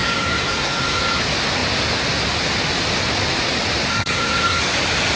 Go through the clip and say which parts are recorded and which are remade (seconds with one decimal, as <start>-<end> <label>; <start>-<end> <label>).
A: 0.0-1.2 remade; 1.2-3.9 recorded; 3.9-4.6 remade; 4.6-5.2 recorded